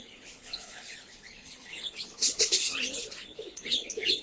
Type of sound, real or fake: fake